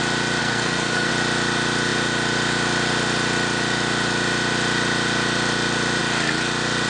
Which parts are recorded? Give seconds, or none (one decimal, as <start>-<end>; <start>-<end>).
0.0-0.4; 1.1-6.9